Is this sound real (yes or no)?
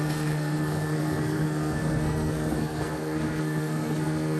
no